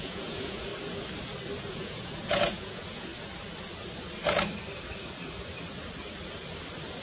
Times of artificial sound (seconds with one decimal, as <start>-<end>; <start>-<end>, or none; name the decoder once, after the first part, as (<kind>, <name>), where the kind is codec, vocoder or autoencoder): 0.0-0.7 (vocoder, Vocos); 1.7-3.1

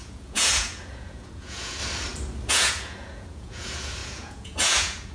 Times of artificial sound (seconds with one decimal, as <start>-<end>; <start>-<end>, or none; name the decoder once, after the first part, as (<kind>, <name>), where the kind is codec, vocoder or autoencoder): 0.0-1.8 (vocoder, Vocos); 2.5-5.1

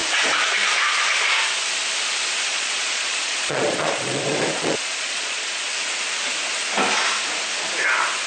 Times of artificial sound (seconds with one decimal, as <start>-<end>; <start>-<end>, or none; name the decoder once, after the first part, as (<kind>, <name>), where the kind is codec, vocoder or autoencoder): 2.5-5.7 (vocoder, Vocos)

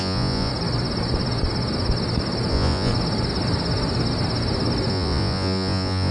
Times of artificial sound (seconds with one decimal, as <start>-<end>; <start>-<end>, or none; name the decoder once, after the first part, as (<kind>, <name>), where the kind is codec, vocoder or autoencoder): 0.0-0.5 (vocoder, Vocos); 2.5-2.9; 4.9-6.1

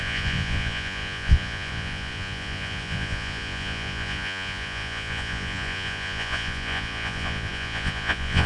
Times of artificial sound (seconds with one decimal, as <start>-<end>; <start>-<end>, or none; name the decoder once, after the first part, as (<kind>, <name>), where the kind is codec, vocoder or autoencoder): 0.0-8.5 (vocoder, Vocos)

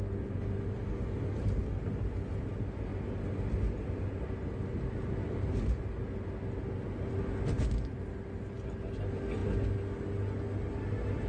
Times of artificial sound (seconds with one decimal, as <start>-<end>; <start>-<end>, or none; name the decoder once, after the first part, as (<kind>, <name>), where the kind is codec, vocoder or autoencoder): none

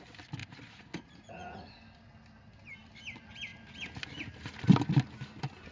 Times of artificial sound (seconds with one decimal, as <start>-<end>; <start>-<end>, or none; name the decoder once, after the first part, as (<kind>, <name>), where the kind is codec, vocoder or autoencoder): 0.4-1.7 (vocoder, Vocos)

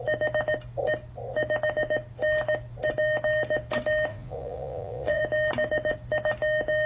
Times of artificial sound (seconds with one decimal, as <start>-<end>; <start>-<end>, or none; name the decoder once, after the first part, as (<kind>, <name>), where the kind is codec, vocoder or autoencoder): 4.1-5.2 (vocoder, Vocos)